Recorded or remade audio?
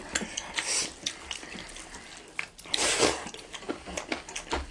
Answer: recorded